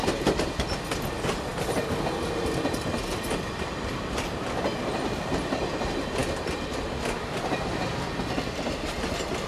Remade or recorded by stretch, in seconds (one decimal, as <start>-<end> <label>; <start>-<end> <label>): 0.0-9.5 recorded